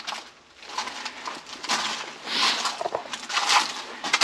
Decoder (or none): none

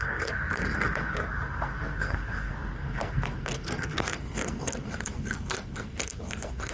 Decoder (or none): codec, SNAC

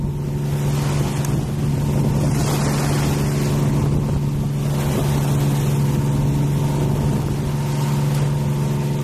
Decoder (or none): none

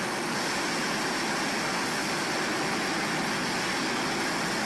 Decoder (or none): none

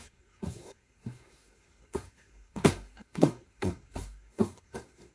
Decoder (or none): codec, SNAC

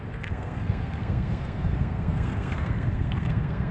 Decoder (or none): codec, SNAC